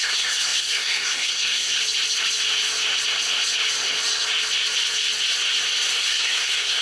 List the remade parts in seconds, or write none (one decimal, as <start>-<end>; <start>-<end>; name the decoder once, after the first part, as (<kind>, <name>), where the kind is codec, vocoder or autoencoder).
0.0-1.8 (codec, SNAC); 5.9-6.8